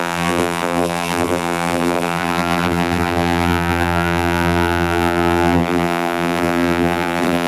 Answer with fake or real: fake